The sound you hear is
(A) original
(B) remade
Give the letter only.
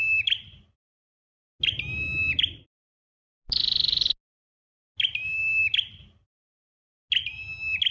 A